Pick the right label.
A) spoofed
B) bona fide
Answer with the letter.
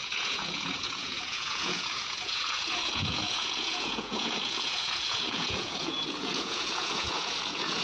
A